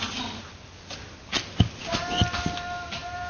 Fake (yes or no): no